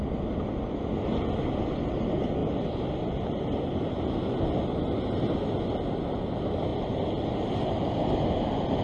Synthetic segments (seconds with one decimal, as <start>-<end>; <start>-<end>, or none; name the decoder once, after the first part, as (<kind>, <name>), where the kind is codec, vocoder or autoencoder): none